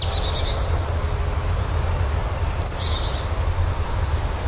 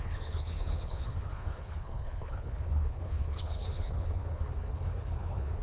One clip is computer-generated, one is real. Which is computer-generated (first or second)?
second